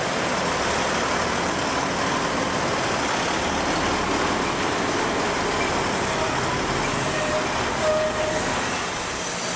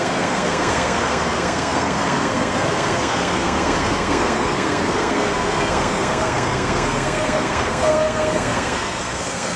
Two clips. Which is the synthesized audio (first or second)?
second